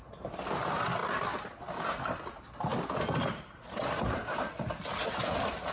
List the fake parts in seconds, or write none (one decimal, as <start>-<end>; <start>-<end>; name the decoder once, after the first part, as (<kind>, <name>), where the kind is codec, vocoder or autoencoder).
none